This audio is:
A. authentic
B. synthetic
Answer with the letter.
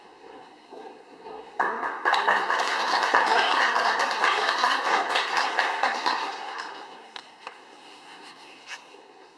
B